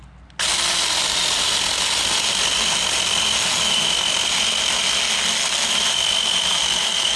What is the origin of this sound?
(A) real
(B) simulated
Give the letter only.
A